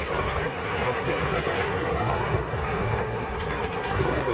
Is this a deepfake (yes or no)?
yes